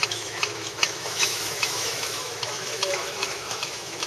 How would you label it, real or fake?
fake